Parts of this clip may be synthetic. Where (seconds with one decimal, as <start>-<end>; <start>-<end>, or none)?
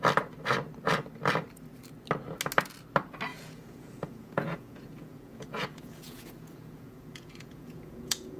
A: 3.3-8.4